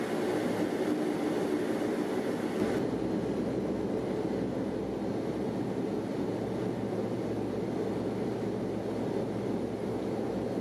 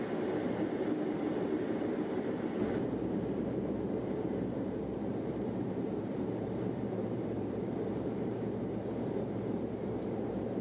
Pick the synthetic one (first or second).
second